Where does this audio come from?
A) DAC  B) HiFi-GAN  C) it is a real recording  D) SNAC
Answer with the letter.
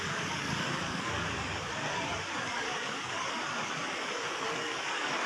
A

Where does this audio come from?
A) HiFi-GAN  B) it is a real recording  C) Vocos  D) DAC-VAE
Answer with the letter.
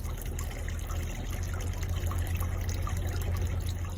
B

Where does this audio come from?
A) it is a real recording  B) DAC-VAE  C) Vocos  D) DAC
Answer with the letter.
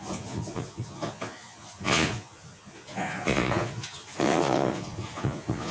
C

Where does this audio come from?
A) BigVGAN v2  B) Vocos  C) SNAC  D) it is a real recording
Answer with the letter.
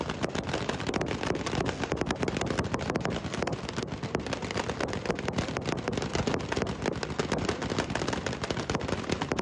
D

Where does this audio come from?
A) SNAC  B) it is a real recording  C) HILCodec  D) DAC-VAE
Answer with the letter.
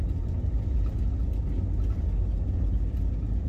B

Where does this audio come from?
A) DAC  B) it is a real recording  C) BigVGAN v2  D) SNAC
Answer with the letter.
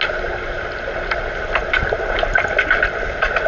B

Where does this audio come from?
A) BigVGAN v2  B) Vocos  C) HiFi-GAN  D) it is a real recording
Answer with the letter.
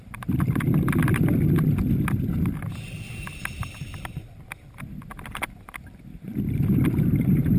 D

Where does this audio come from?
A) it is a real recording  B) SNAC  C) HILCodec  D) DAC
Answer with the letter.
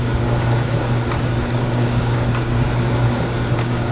D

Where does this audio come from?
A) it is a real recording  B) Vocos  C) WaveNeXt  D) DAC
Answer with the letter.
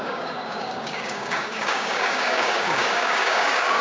D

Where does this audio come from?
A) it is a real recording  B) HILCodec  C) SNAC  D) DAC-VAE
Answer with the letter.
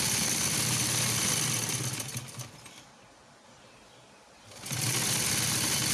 A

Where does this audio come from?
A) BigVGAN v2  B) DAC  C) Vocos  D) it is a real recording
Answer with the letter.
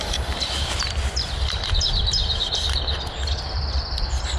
A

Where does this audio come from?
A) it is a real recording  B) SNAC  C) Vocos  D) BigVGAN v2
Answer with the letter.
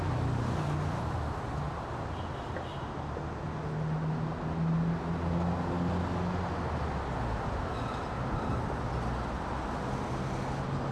A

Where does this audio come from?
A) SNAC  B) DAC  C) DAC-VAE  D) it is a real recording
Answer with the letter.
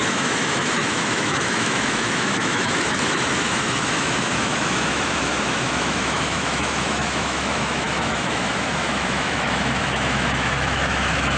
C